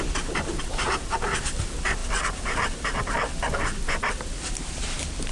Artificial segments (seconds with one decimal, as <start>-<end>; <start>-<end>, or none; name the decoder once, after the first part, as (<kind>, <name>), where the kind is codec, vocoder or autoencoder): none